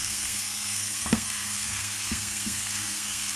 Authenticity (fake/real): fake